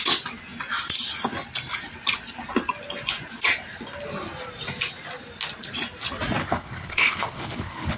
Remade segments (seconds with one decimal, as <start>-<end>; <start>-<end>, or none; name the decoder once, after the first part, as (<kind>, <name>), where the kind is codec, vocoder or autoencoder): 6.4-8.0 (codec, HILCodec)

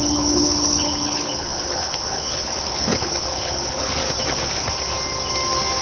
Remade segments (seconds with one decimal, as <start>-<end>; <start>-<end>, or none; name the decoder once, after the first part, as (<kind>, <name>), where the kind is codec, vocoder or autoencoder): 0.0-4.0 (codec, HILCodec)

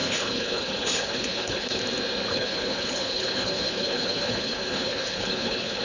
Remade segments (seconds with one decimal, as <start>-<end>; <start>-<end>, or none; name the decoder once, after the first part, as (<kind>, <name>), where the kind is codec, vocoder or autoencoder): 0.0-1.8 (codec, HILCodec); 2.3-5.8